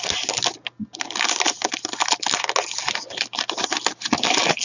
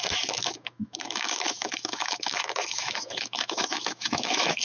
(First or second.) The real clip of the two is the first